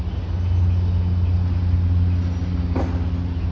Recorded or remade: recorded